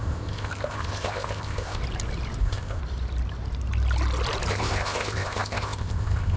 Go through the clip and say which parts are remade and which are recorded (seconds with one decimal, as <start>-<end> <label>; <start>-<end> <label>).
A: 0.0-1.8 remade; 1.8-2.4 recorded; 2.4-2.8 remade; 2.8-4.5 recorded; 4.5-6.4 remade

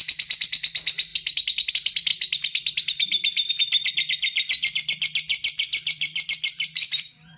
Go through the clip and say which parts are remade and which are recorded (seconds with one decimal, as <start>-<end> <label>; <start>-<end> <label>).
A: 0.0-5.3 recorded; 5.3-7.4 remade

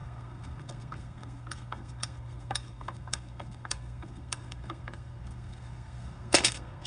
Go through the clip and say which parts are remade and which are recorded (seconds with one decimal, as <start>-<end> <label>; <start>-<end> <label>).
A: 0.0-6.9 remade

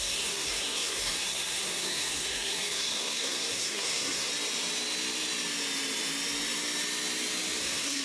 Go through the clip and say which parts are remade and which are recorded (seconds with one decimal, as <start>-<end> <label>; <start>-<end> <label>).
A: 0.0-4.3 remade; 4.3-7.6 recorded; 7.6-8.0 remade

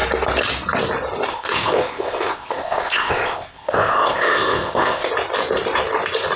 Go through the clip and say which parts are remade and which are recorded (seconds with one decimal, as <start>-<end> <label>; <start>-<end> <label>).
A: 0.0-1.3 recorded; 1.3-5.1 remade; 5.1-6.4 recorded

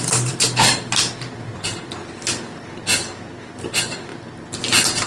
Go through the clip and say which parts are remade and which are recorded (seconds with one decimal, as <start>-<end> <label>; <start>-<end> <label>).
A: 0.0-2.5 remade; 2.5-3.5 recorded; 3.5-4.1 remade; 4.1-5.1 recorded

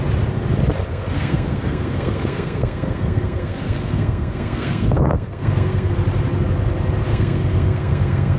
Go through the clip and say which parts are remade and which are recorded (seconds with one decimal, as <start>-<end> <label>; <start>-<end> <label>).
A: 0.0-0.9 recorded; 0.9-5.9 remade; 5.9-7.1 recorded; 7.1-8.4 remade

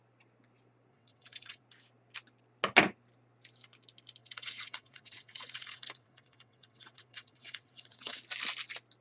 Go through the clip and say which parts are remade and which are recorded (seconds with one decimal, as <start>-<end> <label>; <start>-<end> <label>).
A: 0.0-0.9 recorded; 0.9-1.6 remade; 1.6-4.2 recorded; 4.2-8.2 remade; 8.2-9.0 recorded